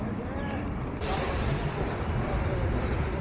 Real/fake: fake